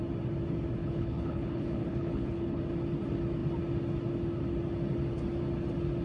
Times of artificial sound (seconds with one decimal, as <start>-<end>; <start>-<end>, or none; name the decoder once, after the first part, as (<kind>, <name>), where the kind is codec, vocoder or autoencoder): 0.8-2.6 (codec, HILCodec)

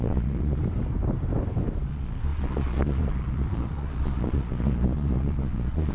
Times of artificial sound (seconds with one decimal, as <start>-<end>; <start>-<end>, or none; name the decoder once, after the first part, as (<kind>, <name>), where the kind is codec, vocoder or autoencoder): 0.0-0.6 (vocoder, Vocos); 1.8-5.9

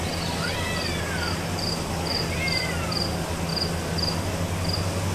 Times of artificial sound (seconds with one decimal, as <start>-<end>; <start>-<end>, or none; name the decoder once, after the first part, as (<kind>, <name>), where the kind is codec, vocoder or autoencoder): none

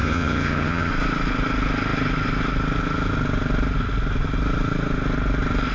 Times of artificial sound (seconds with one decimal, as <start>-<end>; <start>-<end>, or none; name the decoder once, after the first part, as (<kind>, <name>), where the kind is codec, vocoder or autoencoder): 0.0-0.9 (vocoder, HiFi-GAN)

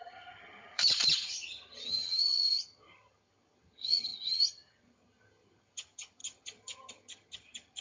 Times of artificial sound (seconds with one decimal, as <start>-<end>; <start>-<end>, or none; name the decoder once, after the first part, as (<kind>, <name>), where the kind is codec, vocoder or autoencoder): 0.0-7.8 (vocoder, HiFi-GAN)

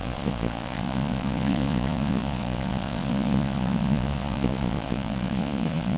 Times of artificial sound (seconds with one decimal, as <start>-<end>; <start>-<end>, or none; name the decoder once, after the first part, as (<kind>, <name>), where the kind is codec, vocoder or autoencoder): 0.0-6.0 (vocoder, Vocos)

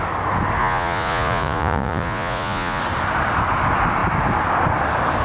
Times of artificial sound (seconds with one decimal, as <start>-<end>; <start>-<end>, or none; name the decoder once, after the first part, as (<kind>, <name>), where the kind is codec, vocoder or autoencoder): 0.6-2.8 (vocoder, Vocos)